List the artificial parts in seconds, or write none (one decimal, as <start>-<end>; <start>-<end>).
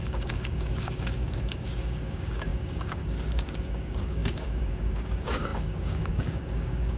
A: 0.0-7.0